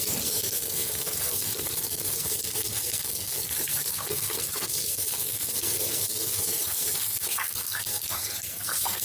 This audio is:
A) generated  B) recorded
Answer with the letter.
A